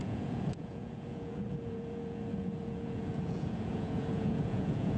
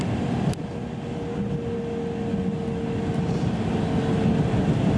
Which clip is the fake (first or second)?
first